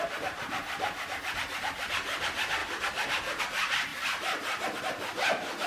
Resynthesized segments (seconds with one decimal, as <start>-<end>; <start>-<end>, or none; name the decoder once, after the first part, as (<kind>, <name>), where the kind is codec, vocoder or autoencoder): 0.0-2.6 (vocoder, BigVGAN v2); 3.4-3.9; 4.8-5.7

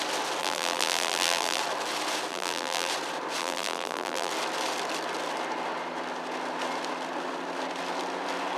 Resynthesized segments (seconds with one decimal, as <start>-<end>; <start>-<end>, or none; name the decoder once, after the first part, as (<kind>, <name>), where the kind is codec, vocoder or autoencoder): 0.4-1.6 (vocoder, BigVGAN v2); 2.3-2.9; 3.4-4.3